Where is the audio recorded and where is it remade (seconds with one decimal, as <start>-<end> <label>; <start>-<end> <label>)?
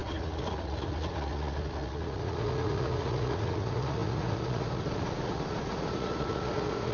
0.0-6.9 remade